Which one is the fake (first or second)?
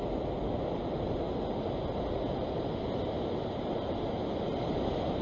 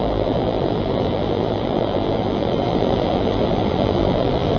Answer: second